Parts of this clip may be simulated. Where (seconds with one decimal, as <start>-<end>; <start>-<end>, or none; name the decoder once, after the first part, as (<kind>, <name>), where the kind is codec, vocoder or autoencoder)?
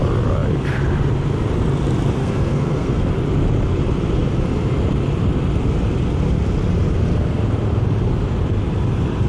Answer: 2.2-3.1 (codec, SNAC)